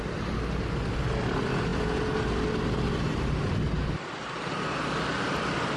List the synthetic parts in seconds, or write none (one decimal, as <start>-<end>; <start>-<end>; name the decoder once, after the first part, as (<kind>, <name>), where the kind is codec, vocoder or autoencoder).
none